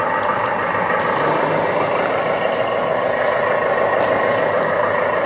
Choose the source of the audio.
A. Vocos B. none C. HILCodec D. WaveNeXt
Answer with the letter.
B